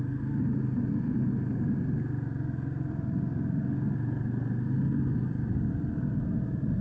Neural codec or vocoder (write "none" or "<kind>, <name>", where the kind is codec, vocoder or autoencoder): none